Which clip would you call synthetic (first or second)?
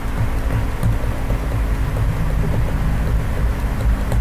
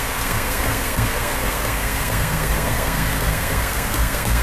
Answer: second